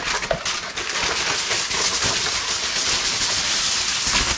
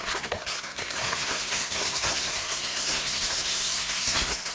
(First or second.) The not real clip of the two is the second